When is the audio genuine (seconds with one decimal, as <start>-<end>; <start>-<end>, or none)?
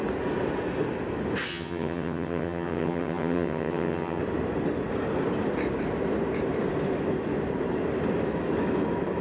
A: 0.0-1.5; 4.2-9.2